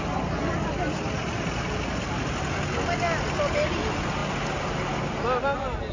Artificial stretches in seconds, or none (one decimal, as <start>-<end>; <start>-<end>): none